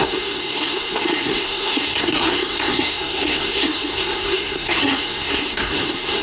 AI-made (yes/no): yes